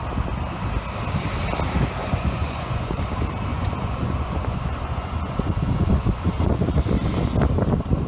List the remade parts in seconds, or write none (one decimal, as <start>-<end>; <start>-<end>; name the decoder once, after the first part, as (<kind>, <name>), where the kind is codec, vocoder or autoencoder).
2.0-3.0 (vocoder, Vocos); 3.5-6.8